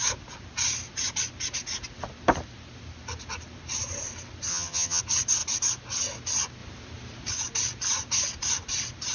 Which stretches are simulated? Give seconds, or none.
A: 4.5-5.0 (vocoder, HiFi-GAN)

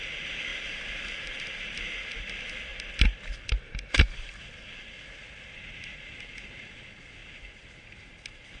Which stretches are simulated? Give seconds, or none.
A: 0.5-1.6 (vocoder, BigVGAN v2)

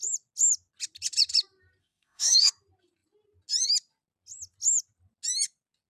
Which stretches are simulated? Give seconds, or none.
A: 1.8-2.5 (autoencoder, DAC-VAE)

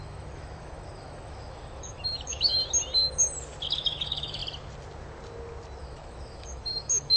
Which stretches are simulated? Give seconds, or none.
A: 0.0-2.6 (autoencoder, DAC-VAE); 3.6-4.4; 5.8-7.2

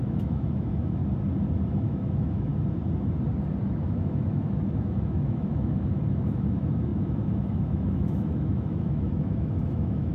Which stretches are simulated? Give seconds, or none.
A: 0.0-1.0 (autoencoder, DAC-VAE); 1.7-2.5; 3.6-10.1

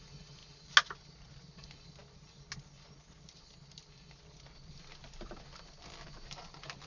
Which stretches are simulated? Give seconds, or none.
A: none

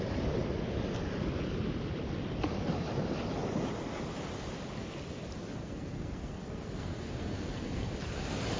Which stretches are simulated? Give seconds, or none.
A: 5.6-7.9 (codec, SNAC)

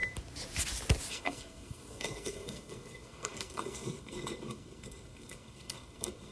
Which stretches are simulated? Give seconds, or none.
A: 1.1-6.3 (codec, SNAC)